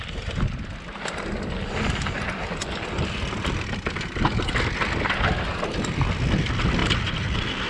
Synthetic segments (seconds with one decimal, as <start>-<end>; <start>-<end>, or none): none